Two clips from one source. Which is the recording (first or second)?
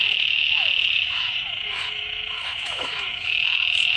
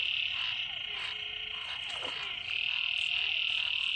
second